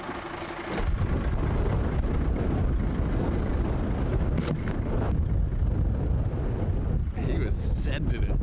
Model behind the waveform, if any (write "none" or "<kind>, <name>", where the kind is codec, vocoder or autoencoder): none